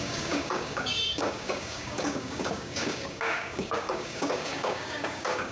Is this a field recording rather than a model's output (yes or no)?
no